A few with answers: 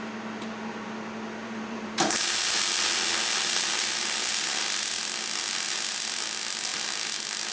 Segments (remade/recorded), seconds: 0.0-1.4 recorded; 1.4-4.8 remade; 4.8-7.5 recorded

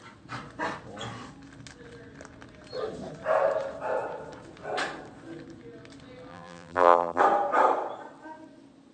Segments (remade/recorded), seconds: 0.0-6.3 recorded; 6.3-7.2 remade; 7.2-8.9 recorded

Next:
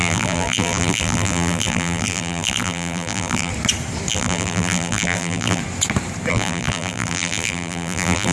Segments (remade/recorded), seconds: 0.0-3.5 remade; 3.5-4.1 recorded; 4.1-5.6 remade; 5.6-6.3 recorded; 6.3-8.3 remade

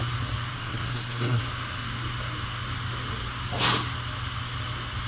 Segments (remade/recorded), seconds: 0.0-0.5 recorded; 0.5-1.4 remade; 1.4-5.1 recorded